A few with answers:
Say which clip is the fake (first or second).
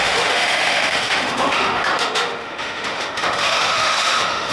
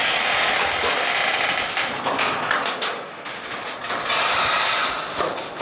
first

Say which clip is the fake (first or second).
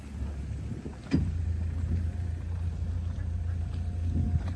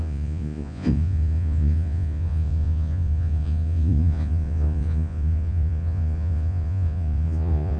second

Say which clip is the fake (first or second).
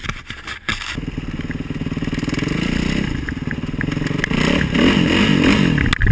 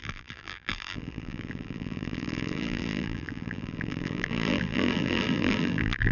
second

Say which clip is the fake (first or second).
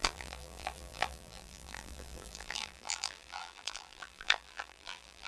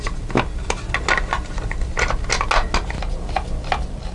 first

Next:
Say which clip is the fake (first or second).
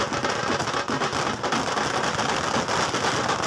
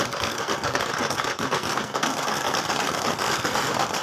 second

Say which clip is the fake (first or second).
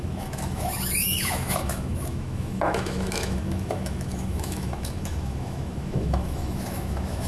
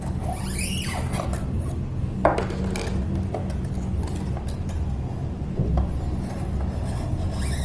first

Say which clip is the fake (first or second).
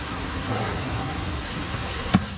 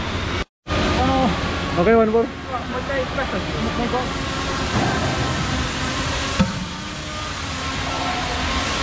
first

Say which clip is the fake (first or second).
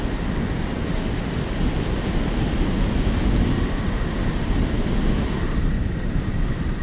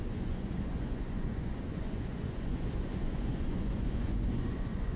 second